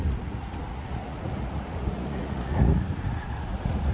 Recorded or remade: remade